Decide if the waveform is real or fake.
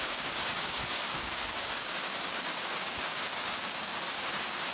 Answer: fake